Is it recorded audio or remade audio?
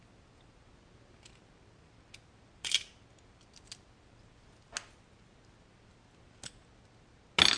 recorded